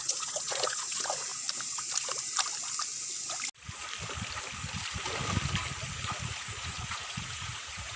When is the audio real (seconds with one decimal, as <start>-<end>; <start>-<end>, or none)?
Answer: 1.3-5.9